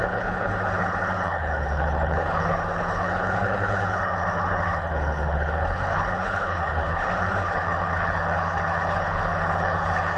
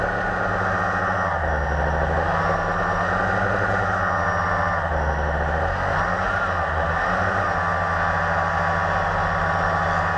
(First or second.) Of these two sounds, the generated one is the first